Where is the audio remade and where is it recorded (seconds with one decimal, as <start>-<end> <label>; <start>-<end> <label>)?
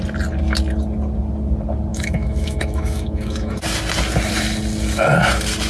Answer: 0.0-1.9 recorded; 1.9-3.5 remade; 3.5-5.7 recorded